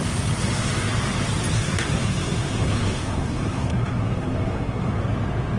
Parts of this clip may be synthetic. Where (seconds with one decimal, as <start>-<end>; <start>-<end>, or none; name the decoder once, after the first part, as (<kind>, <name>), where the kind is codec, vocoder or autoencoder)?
1.5-4.9 (codec, SNAC)

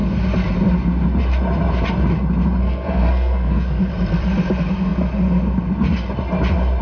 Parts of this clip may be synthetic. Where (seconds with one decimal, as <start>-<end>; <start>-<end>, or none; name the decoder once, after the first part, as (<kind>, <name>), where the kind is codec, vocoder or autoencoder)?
2.6-3.8 (codec, SNAC)

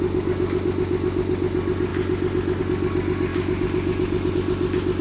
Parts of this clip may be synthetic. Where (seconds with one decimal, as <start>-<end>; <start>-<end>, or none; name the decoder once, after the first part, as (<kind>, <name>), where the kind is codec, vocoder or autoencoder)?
none

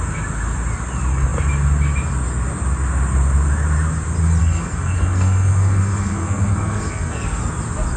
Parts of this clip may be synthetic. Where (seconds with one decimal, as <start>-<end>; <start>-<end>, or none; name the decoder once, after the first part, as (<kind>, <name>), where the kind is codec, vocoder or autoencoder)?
4.4-7.4 (codec, SNAC)

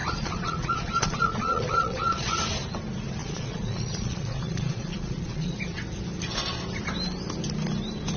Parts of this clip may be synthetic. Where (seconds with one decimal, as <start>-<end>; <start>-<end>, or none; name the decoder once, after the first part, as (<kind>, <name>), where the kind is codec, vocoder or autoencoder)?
0.0-2.4 (vocoder, Vocos); 3.2-5.6

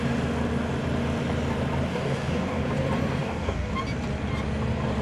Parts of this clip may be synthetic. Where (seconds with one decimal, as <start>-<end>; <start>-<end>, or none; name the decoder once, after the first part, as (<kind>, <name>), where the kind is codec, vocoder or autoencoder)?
1.9-2.6 (codec, DAC); 3.2-3.7

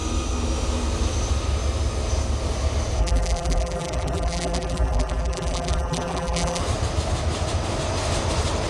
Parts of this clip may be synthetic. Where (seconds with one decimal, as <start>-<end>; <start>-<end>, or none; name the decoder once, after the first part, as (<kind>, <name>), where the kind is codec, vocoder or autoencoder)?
3.0-6.6 (vocoder, BigVGAN v2)